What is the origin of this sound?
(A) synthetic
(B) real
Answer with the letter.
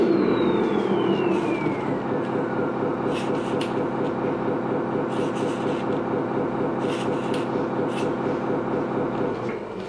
B